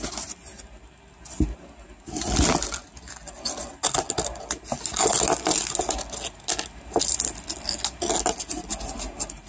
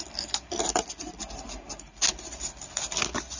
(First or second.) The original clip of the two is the first